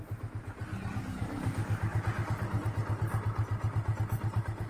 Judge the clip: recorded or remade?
recorded